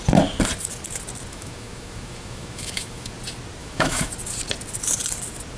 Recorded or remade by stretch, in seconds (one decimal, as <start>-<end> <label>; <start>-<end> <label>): 0.0-1.3 recorded; 1.3-3.1 remade; 3.1-3.6 recorded; 3.6-4.1 remade; 4.1-5.6 recorded

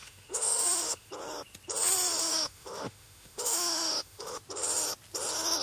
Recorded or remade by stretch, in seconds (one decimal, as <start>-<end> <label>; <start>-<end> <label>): 0.0-1.1 remade; 1.1-2.2 recorded; 2.2-4.4 remade; 4.4-5.6 recorded